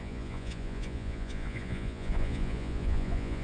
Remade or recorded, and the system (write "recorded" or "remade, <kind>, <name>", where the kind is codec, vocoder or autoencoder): remade, vocoder, Vocos